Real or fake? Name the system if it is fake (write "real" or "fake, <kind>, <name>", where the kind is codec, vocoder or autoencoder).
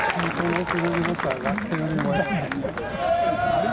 real